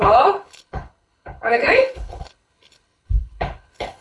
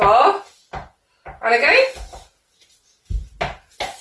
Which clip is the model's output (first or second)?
first